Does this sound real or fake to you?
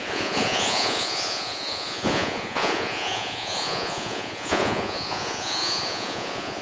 fake